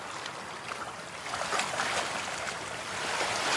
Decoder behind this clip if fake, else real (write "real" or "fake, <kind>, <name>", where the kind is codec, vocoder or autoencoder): real